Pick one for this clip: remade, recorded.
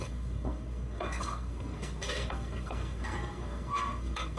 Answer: remade